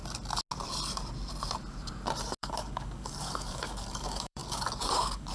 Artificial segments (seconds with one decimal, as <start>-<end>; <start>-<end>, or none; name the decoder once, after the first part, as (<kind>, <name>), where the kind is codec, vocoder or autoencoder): 2.4-5.3 (codec, DAC)